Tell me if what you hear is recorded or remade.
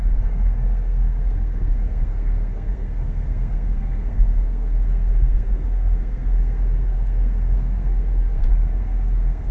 remade